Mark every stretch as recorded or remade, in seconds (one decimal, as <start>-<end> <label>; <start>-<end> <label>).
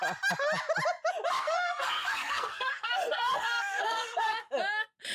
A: 0.0-1.3 recorded; 1.3-4.4 remade; 4.4-5.1 recorded